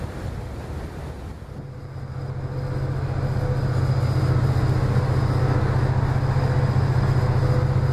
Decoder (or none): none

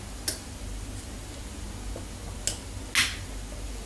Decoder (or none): none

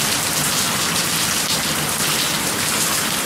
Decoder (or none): none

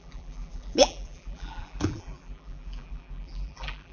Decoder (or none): vocoder, BigVGAN v2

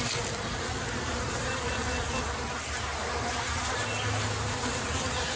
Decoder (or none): none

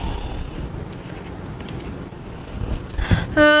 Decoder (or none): none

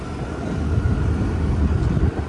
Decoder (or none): none